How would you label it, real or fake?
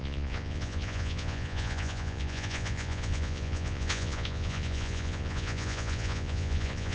fake